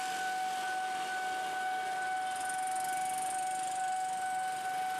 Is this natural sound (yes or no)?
yes